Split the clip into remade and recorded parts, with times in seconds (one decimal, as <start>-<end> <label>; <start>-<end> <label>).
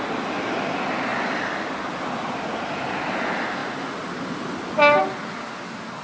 0.0-6.0 recorded